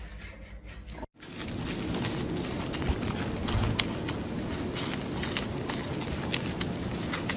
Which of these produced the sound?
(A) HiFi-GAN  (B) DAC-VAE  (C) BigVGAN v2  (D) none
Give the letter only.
D